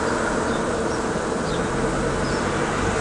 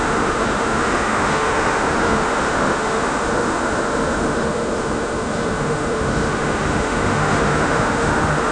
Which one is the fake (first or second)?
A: second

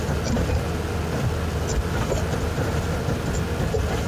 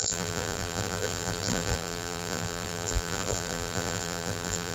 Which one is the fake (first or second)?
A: second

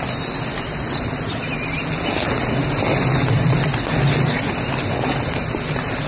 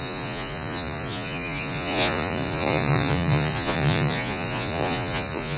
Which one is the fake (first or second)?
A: second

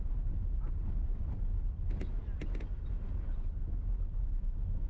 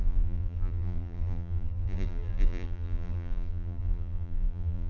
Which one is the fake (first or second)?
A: second